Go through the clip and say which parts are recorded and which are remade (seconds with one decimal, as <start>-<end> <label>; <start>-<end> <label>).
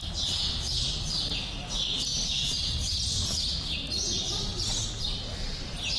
0.0-6.0 recorded